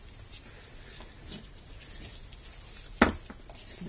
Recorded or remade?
recorded